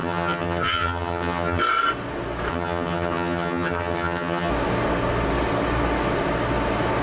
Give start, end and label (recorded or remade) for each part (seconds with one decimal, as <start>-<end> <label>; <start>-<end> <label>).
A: 0.0-1.6 remade; 1.6-2.5 recorded; 2.5-4.5 remade; 4.5-7.0 recorded

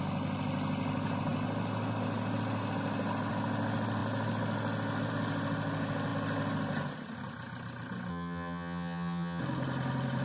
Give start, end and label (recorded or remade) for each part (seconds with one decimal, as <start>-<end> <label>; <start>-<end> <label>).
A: 0.0-8.1 recorded; 8.1-9.4 remade; 9.4-10.2 recorded

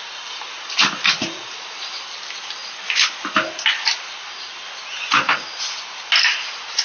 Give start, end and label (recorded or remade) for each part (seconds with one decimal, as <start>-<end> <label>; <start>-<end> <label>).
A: 0.0-6.8 recorded

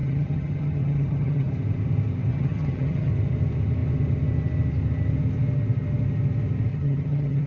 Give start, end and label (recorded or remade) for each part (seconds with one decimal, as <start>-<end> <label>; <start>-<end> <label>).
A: 0.0-1.5 remade; 1.5-2.3 recorded; 2.3-3.1 remade; 3.1-6.7 recorded; 6.7-7.5 remade

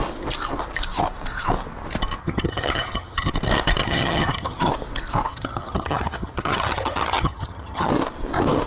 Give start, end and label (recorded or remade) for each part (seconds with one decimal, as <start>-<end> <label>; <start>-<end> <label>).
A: 0.0-2.2 recorded; 2.2-3.3 remade; 3.3-3.8 recorded; 3.8-4.7 remade; 4.7-5.3 recorded; 5.3-7.9 remade; 7.9-8.7 recorded